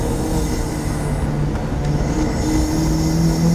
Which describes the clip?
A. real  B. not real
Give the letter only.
A